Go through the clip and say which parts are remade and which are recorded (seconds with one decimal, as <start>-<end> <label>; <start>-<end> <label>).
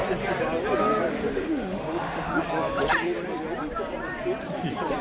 0.0-1.1 recorded; 1.1-2.3 remade; 2.3-5.0 recorded